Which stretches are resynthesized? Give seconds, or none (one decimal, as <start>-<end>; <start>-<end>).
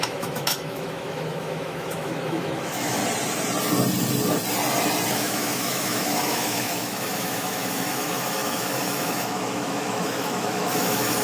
0.0-3.0; 5.1-11.2